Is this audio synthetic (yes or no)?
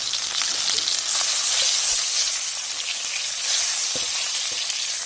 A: no